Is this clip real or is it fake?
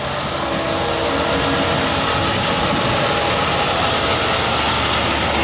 real